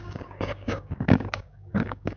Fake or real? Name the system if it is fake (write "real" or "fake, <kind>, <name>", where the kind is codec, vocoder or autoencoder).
fake, codec, DAC